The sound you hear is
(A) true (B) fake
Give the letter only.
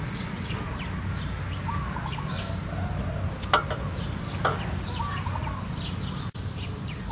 A